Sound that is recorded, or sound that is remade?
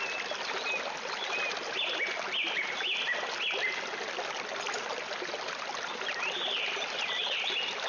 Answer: recorded